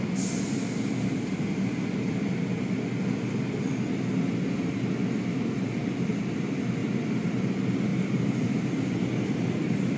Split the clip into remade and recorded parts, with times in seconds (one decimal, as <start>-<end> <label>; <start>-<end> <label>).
0.0-7.9 recorded; 7.9-9.6 remade; 9.6-10.0 recorded

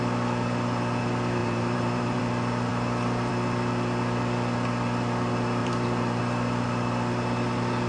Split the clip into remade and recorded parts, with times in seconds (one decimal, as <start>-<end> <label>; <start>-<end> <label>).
0.0-1.4 recorded; 1.4-2.2 remade; 2.2-5.6 recorded; 5.6-6.2 remade; 6.2-7.9 recorded

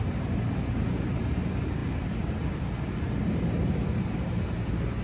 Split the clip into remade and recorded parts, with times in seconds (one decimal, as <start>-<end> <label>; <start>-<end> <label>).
0.0-5.0 remade

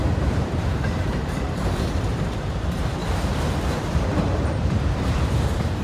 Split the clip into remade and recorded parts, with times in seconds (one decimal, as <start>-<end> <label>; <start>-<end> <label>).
0.0-3.0 remade; 3.0-3.7 recorded; 3.7-5.8 remade

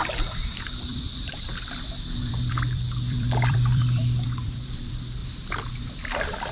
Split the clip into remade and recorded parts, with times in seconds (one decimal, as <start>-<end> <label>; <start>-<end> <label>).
0.0-0.9 recorded; 0.9-4.8 remade; 4.8-5.2 recorded; 5.2-6.0 remade; 6.0-6.5 recorded

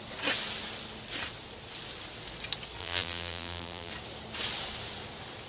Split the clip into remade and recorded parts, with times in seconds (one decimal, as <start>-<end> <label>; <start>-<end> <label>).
0.0-2.8 recorded; 2.8-3.9 remade; 3.9-5.5 recorded